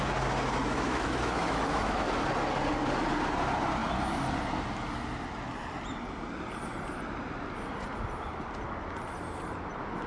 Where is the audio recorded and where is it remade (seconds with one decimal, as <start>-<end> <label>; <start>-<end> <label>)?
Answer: 0.0-0.6 recorded; 0.6-2.1 remade; 2.1-10.1 recorded